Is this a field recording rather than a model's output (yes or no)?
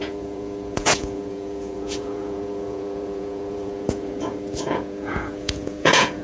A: no